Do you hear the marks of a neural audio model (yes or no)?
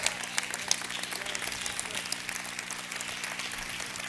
no